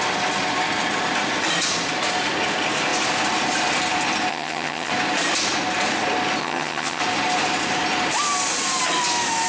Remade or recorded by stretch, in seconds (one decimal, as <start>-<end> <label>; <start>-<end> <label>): 0.0-4.3 recorded; 4.3-4.9 remade; 4.9-6.4 recorded; 6.4-7.0 remade; 7.0-9.5 recorded